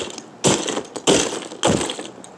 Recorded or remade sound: recorded